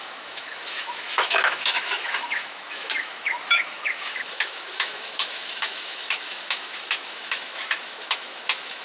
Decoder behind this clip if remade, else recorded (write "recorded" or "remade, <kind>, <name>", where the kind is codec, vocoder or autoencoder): remade, autoencoder, DAC-VAE